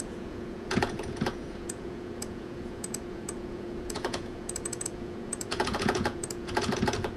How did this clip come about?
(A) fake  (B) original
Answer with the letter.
A